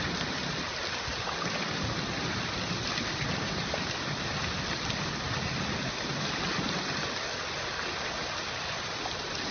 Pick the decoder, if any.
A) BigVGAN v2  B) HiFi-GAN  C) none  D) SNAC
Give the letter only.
C